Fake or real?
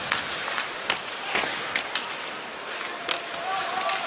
real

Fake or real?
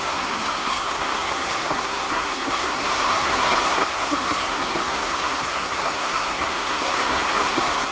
fake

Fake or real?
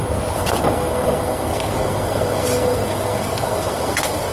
fake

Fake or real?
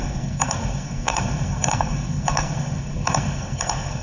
fake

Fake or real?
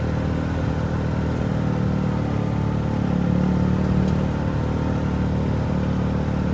real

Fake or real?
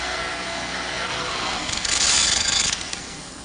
fake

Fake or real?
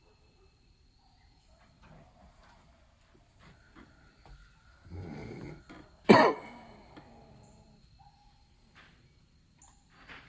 real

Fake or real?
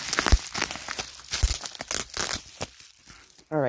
real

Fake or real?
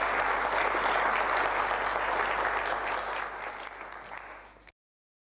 real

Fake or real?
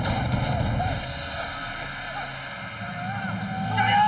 real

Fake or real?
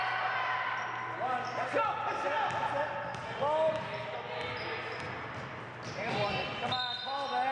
real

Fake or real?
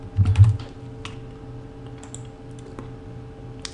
real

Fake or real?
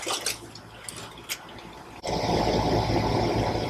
real